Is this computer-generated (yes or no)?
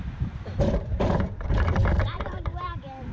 yes